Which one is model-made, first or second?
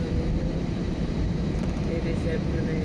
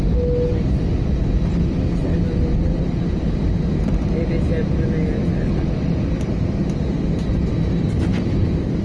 first